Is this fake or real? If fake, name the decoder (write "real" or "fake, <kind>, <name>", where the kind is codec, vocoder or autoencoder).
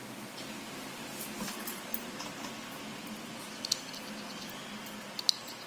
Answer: real